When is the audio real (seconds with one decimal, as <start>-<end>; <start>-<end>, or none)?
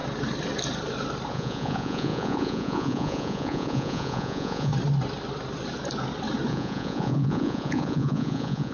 0.0-1.3; 4.7-6.5